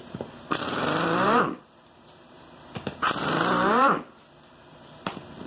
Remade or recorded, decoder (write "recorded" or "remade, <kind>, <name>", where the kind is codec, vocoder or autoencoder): remade, vocoder, BigVGAN v2